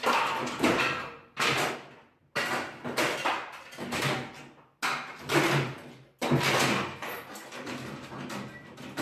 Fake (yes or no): no